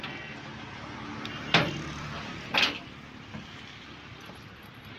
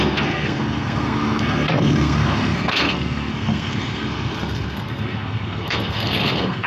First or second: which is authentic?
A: first